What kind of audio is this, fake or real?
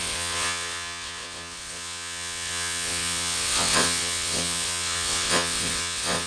fake